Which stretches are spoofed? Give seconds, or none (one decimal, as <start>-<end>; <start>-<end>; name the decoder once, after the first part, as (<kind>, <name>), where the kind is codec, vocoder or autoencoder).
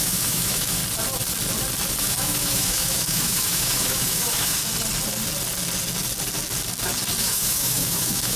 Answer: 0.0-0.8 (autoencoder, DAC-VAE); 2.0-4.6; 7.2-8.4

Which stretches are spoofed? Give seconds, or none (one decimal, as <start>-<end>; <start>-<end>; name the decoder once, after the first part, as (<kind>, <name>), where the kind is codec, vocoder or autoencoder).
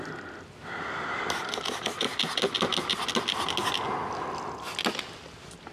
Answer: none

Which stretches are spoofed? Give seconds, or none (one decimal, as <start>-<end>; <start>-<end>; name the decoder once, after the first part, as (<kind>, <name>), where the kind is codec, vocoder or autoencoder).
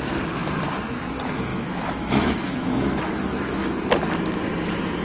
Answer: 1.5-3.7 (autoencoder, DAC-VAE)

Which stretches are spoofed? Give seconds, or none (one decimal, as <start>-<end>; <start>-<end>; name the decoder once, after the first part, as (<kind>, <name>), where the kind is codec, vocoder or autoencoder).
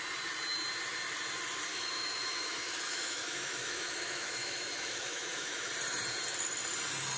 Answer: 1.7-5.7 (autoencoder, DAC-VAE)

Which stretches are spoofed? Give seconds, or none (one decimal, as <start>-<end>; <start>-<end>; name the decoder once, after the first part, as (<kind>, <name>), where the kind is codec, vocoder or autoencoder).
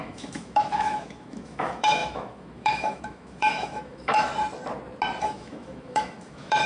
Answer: 0.0-4.3 (autoencoder, DAC-VAE); 5.2-6.7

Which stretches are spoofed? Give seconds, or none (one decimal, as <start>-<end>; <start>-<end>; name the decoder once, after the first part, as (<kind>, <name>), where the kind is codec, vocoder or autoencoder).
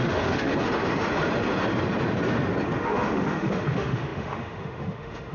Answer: 0.0-0.5 (autoencoder, DAC-VAE); 2.8-5.3